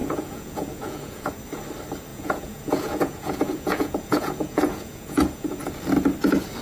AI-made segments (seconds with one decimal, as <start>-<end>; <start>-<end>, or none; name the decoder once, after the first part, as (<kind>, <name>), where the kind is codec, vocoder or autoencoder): 0.0-1.3 (vocoder, Vocos); 2.1-5.6